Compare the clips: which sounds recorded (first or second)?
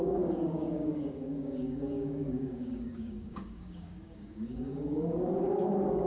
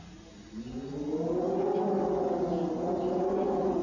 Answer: second